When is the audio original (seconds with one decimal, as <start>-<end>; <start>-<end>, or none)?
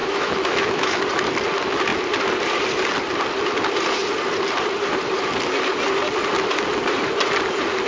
1.0-7.9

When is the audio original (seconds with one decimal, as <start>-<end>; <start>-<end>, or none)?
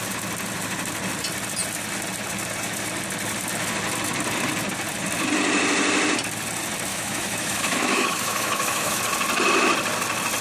0.0-6.9; 9.0-10.4